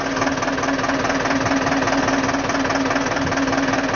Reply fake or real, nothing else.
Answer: real